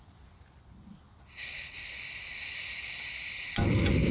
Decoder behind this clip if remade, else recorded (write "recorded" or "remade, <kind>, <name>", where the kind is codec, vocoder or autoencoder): recorded